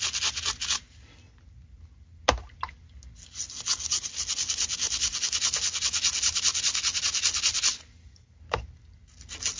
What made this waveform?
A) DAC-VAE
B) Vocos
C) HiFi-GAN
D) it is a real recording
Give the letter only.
D